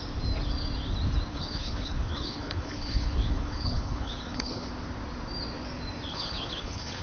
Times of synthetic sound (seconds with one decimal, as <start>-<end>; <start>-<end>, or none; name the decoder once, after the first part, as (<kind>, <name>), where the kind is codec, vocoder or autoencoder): 1.3-4.7 (codec, HILCodec); 6.1-7.0